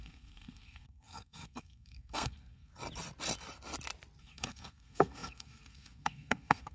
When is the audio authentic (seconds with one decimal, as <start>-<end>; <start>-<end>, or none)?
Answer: 2.7-4.2